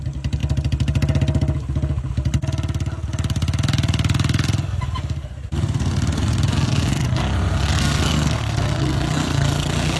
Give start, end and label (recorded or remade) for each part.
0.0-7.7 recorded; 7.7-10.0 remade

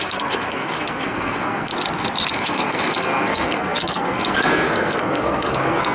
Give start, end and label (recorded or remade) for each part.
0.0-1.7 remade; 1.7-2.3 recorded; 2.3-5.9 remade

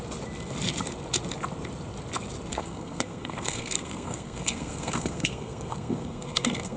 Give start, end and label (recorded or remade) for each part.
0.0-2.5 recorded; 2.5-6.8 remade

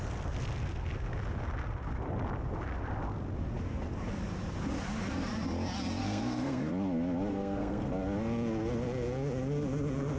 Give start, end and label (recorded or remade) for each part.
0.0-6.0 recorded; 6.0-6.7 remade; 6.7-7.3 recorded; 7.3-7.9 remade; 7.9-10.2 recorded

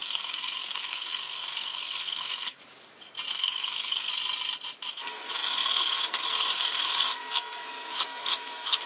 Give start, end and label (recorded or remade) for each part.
0.0-2.6 remade; 2.6-3.3 recorded; 3.3-4.1 remade; 4.1-4.9 recorded; 4.9-8.9 remade

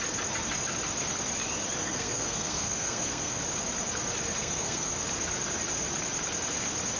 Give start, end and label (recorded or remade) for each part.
0.0-1.8 recorded; 1.8-3.4 remade; 3.4-4.4 recorded; 4.4-4.9 remade; 4.9-7.0 recorded

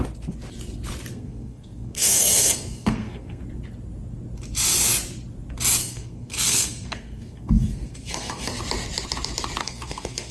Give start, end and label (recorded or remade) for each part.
0.0-1.1 recorded; 1.1-3.4 remade; 3.4-5.8 recorded; 5.8-8.6 remade; 8.6-9.6 recorded; 9.6-10.3 remade

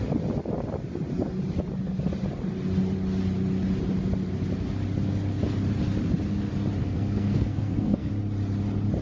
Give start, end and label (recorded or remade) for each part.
0.0-6.8 recorded; 6.8-8.1 remade; 8.1-9.0 recorded